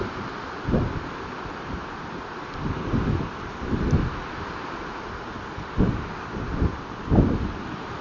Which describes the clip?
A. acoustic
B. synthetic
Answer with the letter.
A